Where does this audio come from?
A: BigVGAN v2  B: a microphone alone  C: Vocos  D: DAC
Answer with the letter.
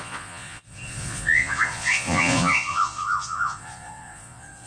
C